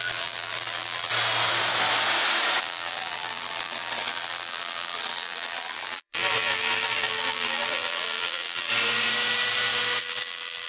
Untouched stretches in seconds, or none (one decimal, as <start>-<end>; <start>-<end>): 1.1-2.6; 8.7-10.0